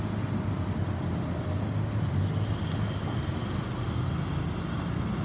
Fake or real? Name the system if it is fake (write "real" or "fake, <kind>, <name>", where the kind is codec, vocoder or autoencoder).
real